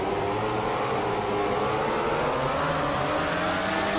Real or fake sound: real